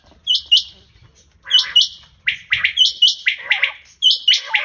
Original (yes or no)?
yes